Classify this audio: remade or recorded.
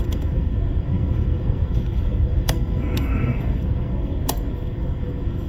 remade